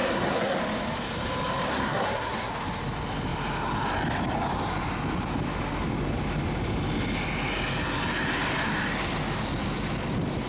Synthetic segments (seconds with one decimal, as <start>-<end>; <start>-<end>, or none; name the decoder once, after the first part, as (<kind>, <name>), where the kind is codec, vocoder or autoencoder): 0.0-0.6 (codec, SNAC); 1.7-2.5